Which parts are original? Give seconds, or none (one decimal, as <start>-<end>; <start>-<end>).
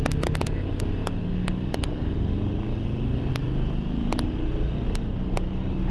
0.0-5.9